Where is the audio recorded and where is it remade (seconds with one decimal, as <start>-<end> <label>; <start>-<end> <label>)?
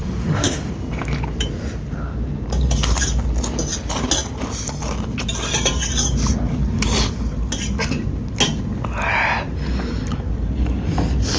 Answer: 0.0-0.7 remade; 0.7-11.4 recorded